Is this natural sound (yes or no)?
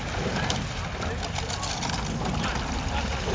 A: yes